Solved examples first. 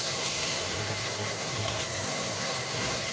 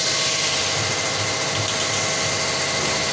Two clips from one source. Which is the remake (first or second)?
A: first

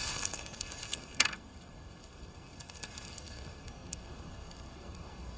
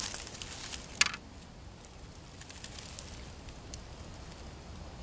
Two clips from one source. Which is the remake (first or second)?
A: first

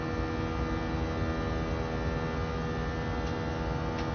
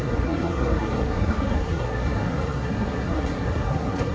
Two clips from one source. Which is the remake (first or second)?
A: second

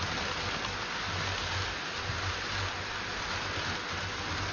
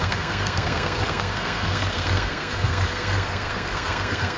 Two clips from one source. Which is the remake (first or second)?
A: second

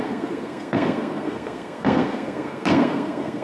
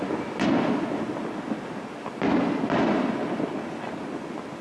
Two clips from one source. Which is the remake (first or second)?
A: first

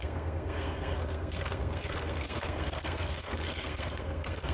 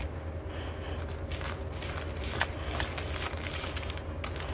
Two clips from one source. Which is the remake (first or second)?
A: first